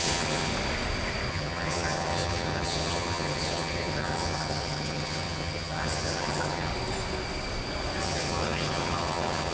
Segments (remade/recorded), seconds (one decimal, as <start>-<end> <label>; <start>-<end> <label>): 0.0-0.5 remade; 0.5-1.3 recorded; 1.3-6.7 remade; 6.7-8.0 recorded; 8.0-9.5 remade